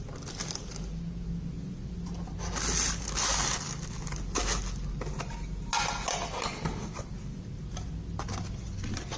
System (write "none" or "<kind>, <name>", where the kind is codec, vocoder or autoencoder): none